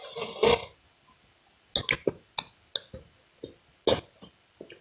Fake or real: real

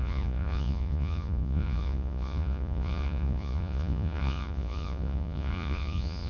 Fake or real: fake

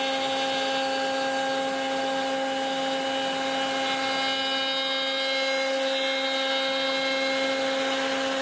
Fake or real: real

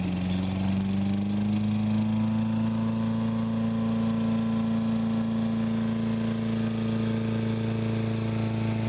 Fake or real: real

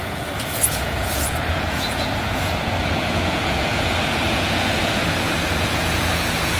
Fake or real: fake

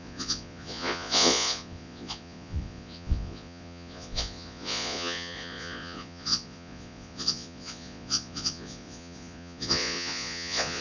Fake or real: fake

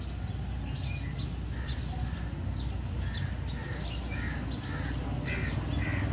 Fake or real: real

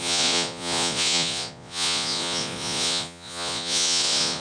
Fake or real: fake